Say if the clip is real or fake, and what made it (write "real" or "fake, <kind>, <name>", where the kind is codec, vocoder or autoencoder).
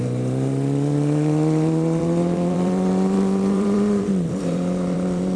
fake, vocoder, BigVGAN v2